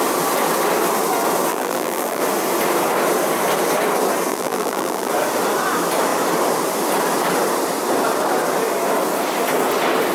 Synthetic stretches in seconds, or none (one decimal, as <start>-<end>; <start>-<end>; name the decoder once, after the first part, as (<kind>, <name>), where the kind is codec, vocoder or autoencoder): 1.5-2.2 (vocoder, BigVGAN v2); 4.3-5.1